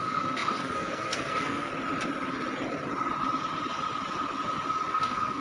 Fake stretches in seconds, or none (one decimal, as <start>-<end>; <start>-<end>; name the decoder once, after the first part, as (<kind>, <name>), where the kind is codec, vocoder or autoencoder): 0.0-1.7 (codec, SNAC); 4.9-5.4